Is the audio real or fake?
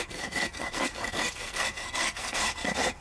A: fake